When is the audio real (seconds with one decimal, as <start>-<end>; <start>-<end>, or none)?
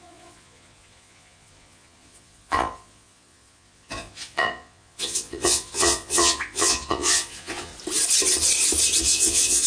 7.7-9.0